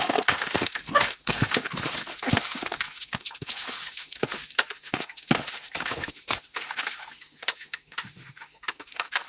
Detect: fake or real fake